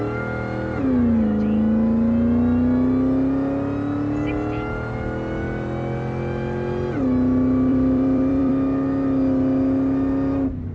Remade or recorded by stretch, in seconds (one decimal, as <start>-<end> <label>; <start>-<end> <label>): 0.0-7.7 recorded; 7.7-8.5 remade; 8.5-10.7 recorded